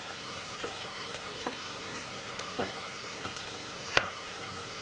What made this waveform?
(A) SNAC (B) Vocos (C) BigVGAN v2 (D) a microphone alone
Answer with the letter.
A